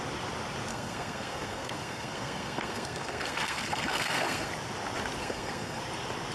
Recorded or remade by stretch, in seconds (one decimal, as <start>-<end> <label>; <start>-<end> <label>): 0.0-0.7 recorded; 0.7-4.5 remade; 4.5-5.2 recorded; 5.2-5.8 remade; 5.8-6.3 recorded